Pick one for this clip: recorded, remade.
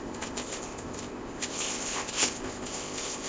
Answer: remade